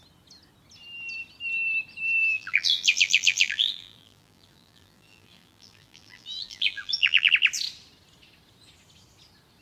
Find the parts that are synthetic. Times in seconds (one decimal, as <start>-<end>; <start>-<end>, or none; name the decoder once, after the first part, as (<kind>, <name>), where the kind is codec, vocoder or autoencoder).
2.2-7.3 (vocoder, BigVGAN v2)

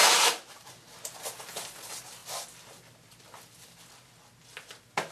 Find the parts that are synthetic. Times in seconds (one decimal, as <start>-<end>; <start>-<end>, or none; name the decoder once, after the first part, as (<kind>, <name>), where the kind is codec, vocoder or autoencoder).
0.0-0.7 (vocoder, BigVGAN v2)